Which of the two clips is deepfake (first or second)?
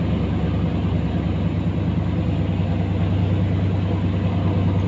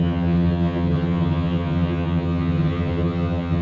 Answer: second